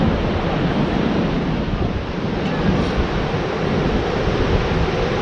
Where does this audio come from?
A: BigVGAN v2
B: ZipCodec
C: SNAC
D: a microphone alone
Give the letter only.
D